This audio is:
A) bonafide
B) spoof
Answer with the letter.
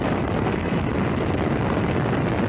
A